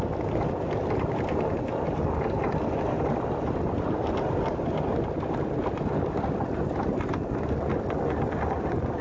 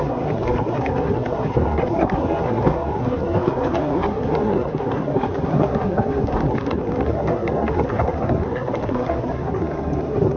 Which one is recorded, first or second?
first